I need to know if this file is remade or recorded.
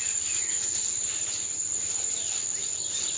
recorded